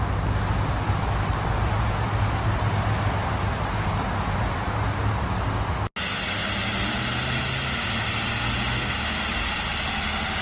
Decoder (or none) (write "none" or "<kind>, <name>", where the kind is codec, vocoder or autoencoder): none